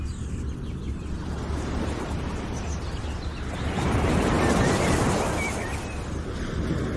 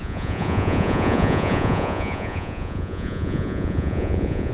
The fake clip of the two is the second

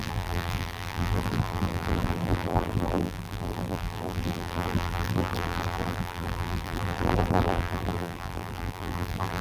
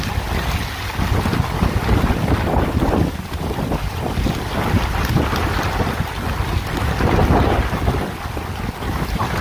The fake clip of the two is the first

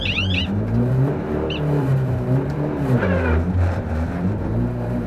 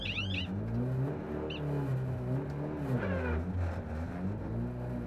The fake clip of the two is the first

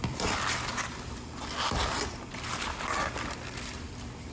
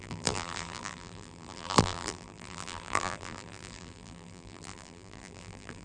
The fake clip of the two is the second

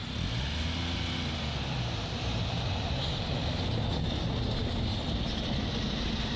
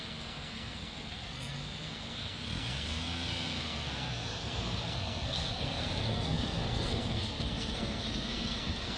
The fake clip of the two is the second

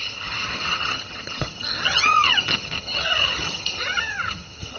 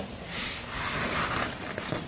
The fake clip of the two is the first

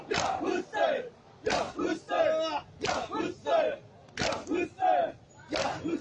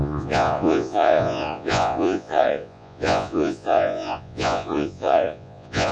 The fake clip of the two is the second